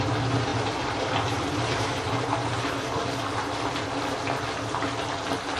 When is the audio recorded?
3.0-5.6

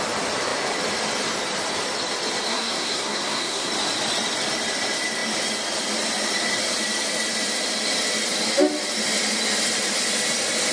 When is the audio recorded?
0.0-2.5; 3.7-10.7